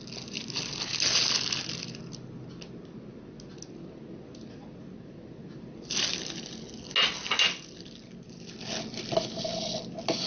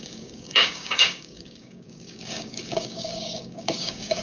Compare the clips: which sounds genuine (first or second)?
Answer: first